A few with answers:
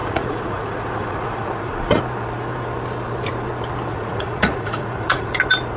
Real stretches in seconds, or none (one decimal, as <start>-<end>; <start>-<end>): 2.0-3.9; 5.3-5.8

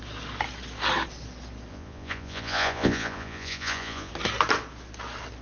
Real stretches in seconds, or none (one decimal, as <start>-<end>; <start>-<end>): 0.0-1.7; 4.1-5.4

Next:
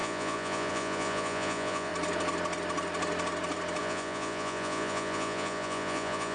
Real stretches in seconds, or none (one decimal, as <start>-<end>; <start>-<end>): 1.9-3.8

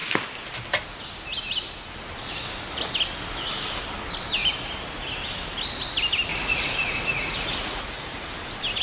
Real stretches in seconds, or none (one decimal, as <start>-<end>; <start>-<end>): 0.0-6.3; 8.3-8.8